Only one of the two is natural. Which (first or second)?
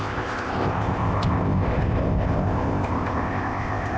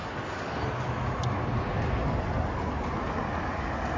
second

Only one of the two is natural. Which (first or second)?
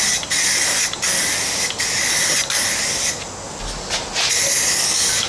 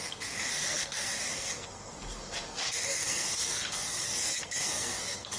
first